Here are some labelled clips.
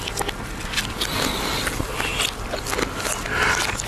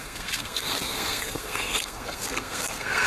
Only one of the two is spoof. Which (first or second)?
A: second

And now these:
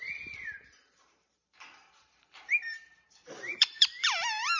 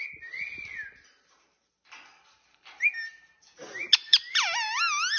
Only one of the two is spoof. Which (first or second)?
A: first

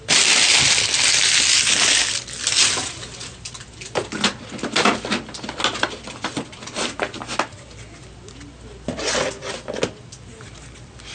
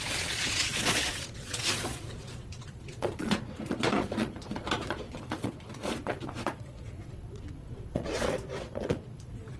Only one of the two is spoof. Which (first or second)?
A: second